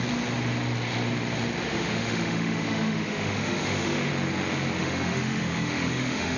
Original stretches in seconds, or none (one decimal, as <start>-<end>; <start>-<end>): 0.0-1.6; 4.1-4.8